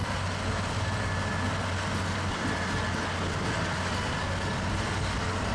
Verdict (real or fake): real